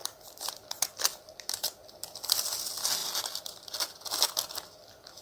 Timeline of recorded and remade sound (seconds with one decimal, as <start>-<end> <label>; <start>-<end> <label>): 0.0-0.5 remade; 0.5-3.0 recorded; 3.0-3.8 remade; 3.8-5.2 recorded